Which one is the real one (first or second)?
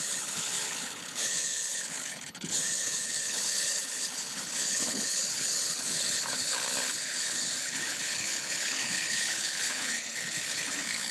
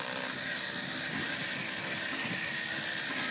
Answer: second